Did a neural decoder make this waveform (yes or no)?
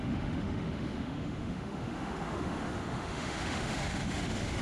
yes